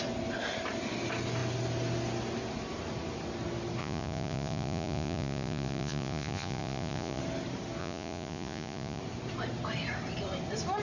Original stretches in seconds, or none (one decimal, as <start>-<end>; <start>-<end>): 0.0-3.8; 7.2-7.8; 9.0-10.8